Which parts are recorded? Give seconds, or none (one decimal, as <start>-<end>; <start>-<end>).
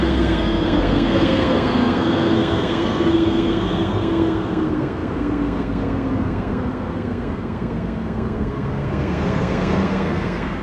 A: none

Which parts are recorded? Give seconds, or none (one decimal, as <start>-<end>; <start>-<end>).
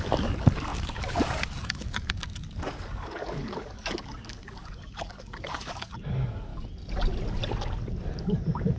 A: 6.5-8.2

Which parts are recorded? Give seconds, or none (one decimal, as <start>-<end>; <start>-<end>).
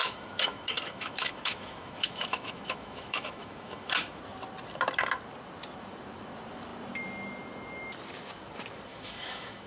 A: 4.2-8.9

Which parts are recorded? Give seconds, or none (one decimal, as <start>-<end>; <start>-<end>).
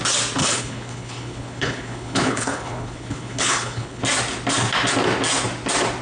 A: 0.0-0.4; 4.0-6.0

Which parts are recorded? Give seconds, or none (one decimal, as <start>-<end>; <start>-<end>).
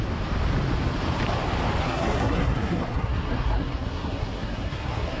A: 0.0-1.8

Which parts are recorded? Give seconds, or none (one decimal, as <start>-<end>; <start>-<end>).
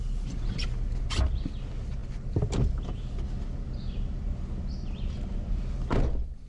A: 0.0-6.5